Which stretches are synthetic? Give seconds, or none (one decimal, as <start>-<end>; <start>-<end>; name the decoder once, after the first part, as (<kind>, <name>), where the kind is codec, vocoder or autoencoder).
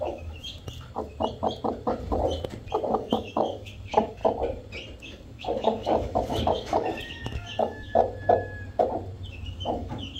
0.0-0.6 (codec, DAC); 2.9-4.2; 5.0-8.0; 9.3-10.2